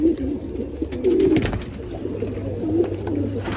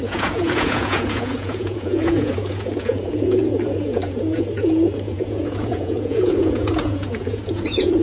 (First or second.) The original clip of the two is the first